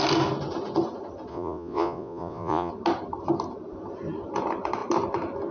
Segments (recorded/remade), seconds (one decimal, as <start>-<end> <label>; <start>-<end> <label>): 0.0-1.3 recorded; 1.3-2.7 remade; 2.7-5.5 recorded